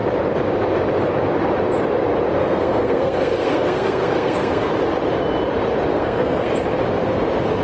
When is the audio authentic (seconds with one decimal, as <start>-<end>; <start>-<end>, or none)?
0.0-2.4; 4.7-5.9; 6.5-7.6